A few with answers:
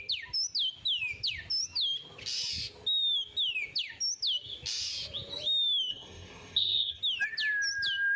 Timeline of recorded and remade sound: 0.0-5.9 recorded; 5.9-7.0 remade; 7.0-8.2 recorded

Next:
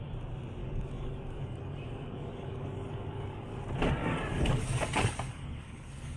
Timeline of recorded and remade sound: 0.0-0.6 recorded; 0.6-3.6 remade; 3.6-4.0 recorded; 4.0-6.2 remade

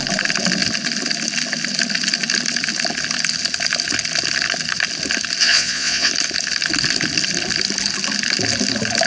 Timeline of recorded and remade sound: 0.0-5.4 recorded; 5.4-6.1 remade; 6.1-9.1 recorded

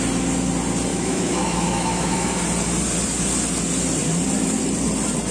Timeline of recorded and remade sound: 0.0-0.9 recorded; 0.9-2.4 remade; 2.4-5.3 recorded

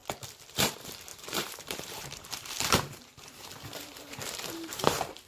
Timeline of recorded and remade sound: 0.0-0.5 recorded; 0.5-5.3 remade